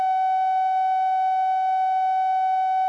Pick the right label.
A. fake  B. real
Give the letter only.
B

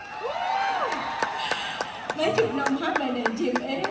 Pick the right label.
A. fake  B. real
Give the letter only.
B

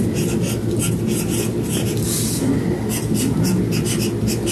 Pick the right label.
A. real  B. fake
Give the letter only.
A